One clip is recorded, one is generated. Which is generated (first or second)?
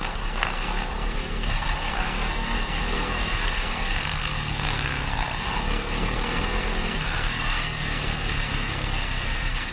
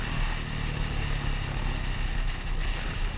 first